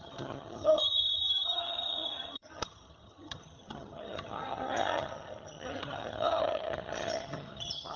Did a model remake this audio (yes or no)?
yes